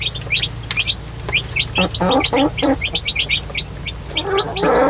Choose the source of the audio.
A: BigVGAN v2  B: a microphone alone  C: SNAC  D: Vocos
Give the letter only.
B